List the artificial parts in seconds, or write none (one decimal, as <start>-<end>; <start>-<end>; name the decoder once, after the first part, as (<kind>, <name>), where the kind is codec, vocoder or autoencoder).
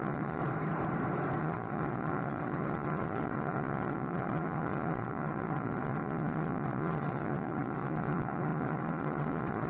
0.0-0.4 (vocoder, Vocos); 1.4-9.7